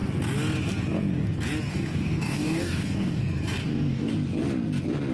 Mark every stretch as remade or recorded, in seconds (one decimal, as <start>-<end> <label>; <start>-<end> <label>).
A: 0.0-1.7 recorded; 1.7-3.2 remade; 3.2-3.6 recorded; 3.6-4.1 remade; 4.1-5.1 recorded